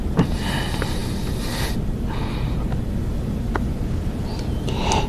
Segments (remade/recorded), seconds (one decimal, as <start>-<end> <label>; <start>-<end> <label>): 0.0-5.1 recorded